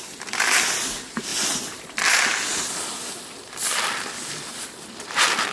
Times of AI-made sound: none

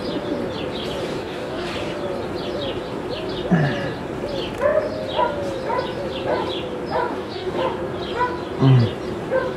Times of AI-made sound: 1.1-1.7 (codec, DAC); 7.1-7.6

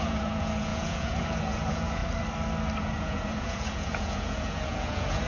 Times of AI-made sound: 0.0-2.0 (vocoder, Vocos); 2.8-5.3

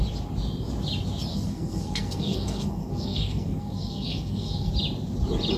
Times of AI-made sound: 1.3-4.7 (codec, SNAC)

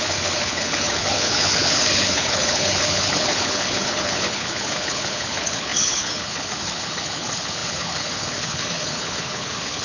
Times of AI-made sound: 0.0-9.8 (codec, HILCodec)

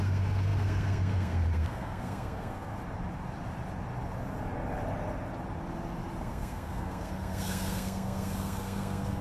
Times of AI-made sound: 0.0-2.7 (codec, SNAC); 6.2-9.2

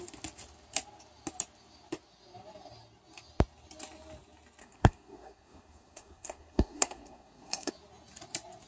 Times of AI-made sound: 4.6-7.7 (codec, SNAC)